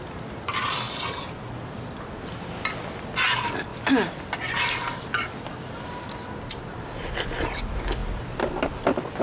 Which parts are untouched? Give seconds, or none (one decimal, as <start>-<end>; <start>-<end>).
0.0-9.2